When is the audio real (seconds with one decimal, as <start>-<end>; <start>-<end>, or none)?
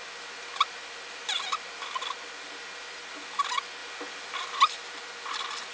0.0-5.7